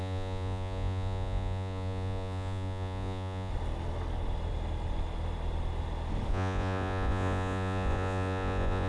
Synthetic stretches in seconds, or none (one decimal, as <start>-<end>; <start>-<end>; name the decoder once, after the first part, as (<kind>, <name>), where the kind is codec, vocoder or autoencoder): 0.0-3.5 (vocoder, Vocos); 6.3-8.9